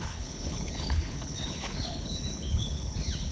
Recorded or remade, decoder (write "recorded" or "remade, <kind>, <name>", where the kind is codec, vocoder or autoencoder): remade, codec, HILCodec